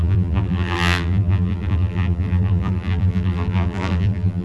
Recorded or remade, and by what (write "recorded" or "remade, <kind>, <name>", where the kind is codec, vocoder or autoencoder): remade, vocoder, BigVGAN v2